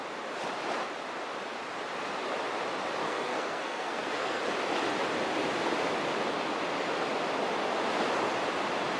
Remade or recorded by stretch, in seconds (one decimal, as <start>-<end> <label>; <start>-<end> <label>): 0.0-3.0 recorded; 3.0-4.4 remade; 4.4-9.0 recorded